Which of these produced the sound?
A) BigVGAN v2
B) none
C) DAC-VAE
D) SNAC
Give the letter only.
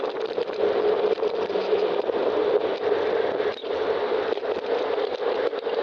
B